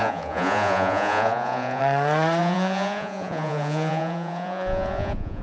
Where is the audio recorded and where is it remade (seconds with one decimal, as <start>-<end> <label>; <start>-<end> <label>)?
0.0-1.8 remade; 1.8-2.4 recorded; 2.4-5.4 remade